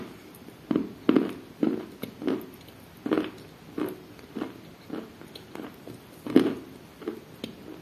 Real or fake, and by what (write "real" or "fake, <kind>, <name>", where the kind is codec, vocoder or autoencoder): real